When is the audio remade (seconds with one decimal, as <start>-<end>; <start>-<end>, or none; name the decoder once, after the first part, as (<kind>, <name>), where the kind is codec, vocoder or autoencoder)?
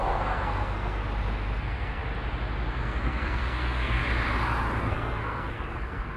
0.0-1.0 (codec, SNAC); 1.6-2.0; 2.7-4.0; 4.8-6.2